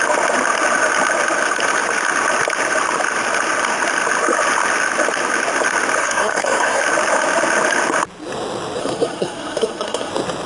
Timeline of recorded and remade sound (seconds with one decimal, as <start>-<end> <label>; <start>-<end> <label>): 0.0-6.0 recorded; 6.0-6.8 remade; 6.8-8.8 recorded; 8.8-10.1 remade; 10.1-10.5 recorded